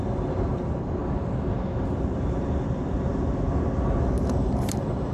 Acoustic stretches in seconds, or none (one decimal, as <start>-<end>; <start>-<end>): 1.0-4.0